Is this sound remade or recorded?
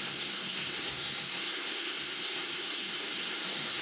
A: remade